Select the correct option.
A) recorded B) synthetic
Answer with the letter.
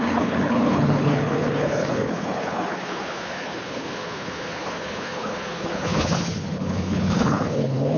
B